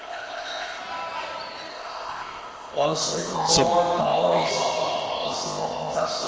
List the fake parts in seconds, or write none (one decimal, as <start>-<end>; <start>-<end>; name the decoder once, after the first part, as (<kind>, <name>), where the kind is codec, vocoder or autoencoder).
0.0-0.8 (codec, ZipCodec); 1.7-3.5; 4.0-4.5; 5.1-6.3